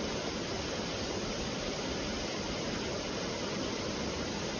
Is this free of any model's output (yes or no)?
yes